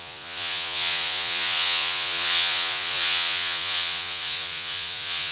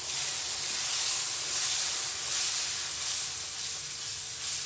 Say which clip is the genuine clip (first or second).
second